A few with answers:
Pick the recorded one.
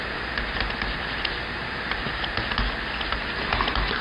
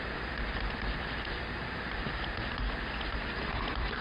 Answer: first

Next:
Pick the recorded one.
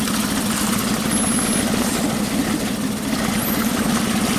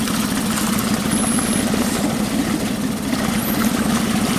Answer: first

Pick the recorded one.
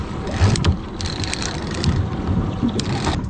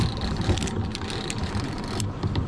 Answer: second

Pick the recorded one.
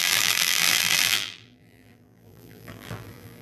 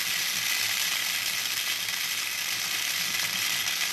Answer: second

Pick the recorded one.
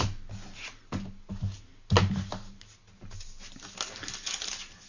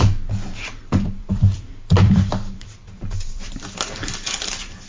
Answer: first